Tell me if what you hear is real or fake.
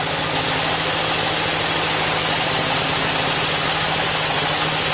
real